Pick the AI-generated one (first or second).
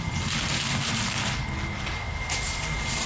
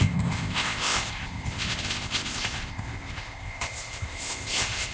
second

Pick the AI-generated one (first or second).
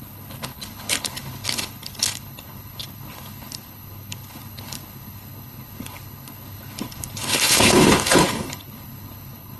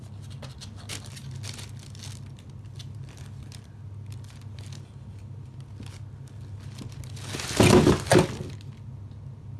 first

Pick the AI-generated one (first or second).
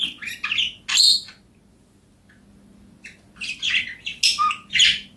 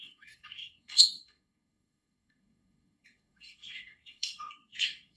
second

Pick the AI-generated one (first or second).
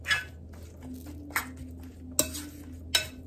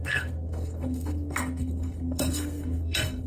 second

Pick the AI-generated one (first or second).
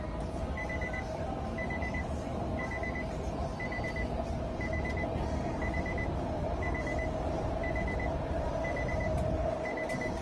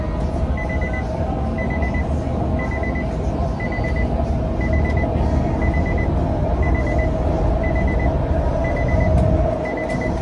first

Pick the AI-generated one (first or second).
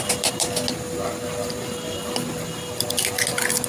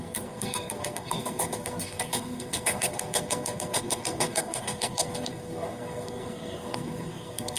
second